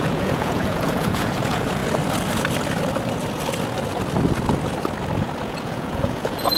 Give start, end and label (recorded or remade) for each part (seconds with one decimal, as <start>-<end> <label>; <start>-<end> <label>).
0.0-1.8 remade; 1.8-5.4 recorded; 5.4-6.6 remade